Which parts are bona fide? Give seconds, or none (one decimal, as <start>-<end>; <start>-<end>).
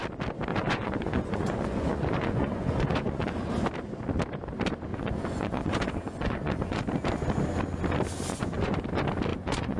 0.0-0.5; 3.5-4.9; 6.8-8.3; 8.8-9.3